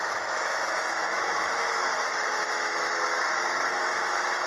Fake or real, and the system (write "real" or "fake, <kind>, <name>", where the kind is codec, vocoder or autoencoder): fake, autoencoder, DAC-VAE